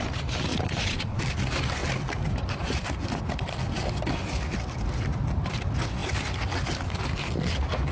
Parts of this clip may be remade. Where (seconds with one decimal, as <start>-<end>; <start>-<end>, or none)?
0.5-1.2